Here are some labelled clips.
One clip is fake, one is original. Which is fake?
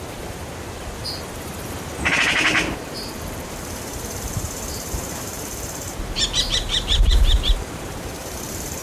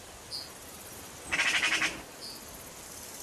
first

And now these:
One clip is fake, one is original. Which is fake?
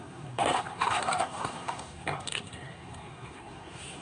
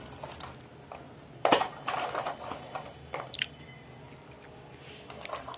first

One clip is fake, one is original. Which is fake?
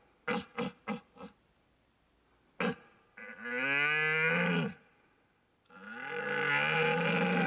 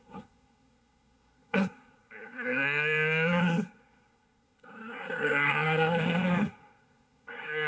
second